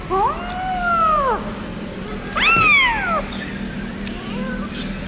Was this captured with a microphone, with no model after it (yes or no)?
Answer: yes